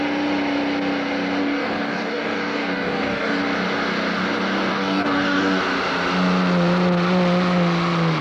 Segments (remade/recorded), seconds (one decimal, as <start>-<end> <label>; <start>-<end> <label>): 0.0-1.4 recorded; 1.4-3.4 remade; 3.4-4.7 recorded; 4.7-5.6 remade; 5.6-8.2 recorded